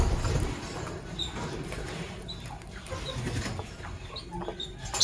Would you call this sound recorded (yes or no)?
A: yes